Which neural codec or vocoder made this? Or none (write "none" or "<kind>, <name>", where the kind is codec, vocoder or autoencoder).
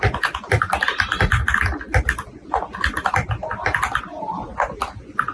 none